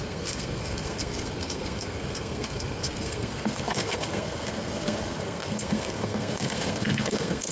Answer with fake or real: fake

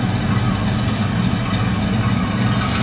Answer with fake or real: real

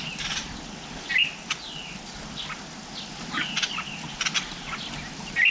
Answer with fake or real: real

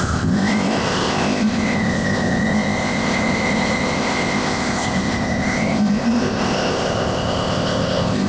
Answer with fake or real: fake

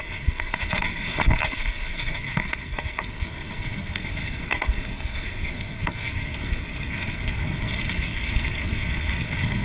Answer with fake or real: fake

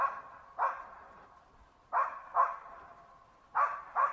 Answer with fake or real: fake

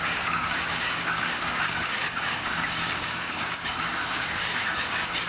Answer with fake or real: fake